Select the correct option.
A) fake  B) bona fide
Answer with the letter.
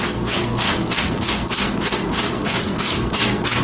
A